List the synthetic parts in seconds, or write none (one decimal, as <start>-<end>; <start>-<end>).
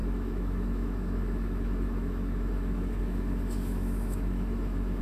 0.0-5.0